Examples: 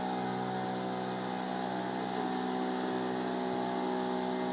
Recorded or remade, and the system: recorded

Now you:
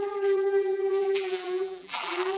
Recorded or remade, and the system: remade, vocoder, BigVGAN v2